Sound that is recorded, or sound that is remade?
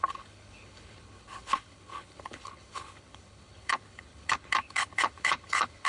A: remade